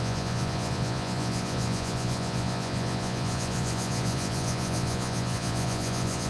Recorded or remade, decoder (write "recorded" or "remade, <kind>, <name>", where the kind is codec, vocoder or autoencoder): remade, vocoder, Vocos